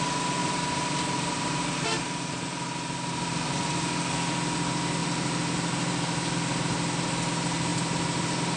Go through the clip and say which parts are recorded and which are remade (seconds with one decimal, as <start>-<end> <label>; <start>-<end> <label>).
0.0-0.4 recorded; 0.4-3.9 remade; 3.9-5.0 recorded; 5.0-5.9 remade; 5.9-8.6 recorded